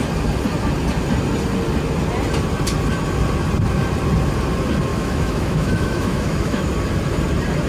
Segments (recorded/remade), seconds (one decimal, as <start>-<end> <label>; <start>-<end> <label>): 0.0-4.9 recorded; 4.9-6.7 remade; 6.7-7.7 recorded